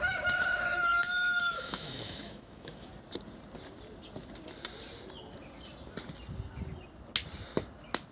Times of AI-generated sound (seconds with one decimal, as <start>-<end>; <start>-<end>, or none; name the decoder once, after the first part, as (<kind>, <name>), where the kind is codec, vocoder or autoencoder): 0.0-2.9 (autoencoder, DAC-VAE)